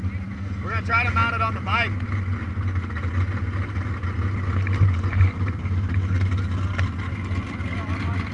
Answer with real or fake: real